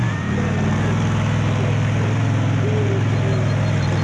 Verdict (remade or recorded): recorded